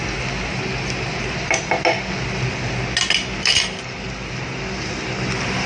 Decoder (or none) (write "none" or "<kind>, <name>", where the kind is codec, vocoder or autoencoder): none